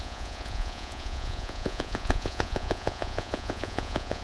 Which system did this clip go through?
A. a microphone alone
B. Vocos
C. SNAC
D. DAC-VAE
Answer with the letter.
B